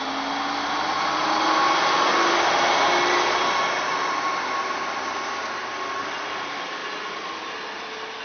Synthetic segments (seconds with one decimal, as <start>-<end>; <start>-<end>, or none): none

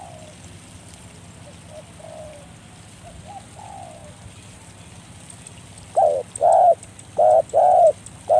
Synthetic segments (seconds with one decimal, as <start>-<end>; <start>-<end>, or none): none

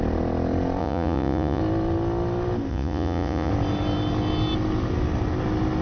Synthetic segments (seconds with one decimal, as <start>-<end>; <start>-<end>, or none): 0.8-1.6; 2.7-3.5

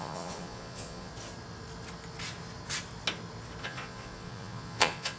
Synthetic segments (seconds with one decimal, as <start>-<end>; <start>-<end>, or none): 0.0-1.1; 3.6-5.2